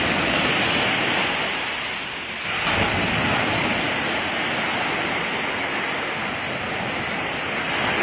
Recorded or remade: recorded